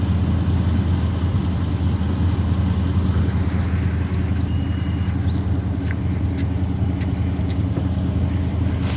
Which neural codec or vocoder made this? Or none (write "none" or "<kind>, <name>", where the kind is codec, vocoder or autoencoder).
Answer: none